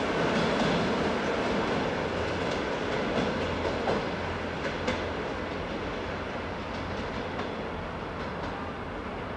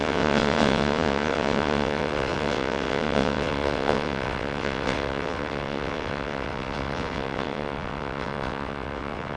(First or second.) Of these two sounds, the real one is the first